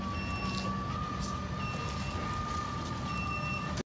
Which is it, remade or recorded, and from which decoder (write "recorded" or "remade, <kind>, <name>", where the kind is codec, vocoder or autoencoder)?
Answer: recorded